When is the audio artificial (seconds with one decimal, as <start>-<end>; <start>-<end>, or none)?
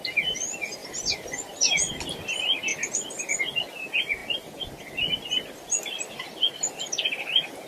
0.8-1.9